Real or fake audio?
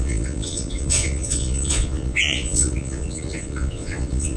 fake